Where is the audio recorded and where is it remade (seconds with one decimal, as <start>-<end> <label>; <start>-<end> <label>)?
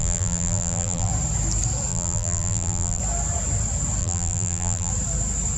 0.0-1.1 remade; 1.1-1.9 recorded; 1.9-3.0 remade; 3.0-4.0 recorded; 4.0-4.9 remade; 4.9-5.6 recorded